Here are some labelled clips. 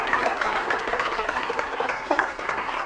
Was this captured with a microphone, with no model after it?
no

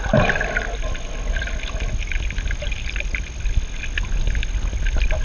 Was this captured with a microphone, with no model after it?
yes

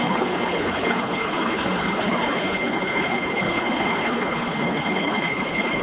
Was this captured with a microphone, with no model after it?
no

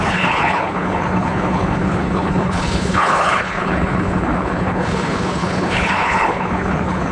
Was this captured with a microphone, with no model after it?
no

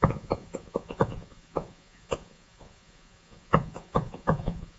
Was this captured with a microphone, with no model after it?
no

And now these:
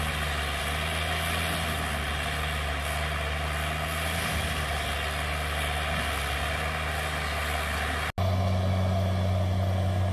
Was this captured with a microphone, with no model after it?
yes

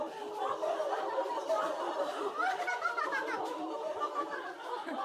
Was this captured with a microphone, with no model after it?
yes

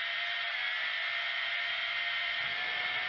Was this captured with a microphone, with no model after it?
yes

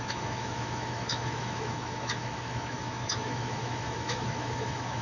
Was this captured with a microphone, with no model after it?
no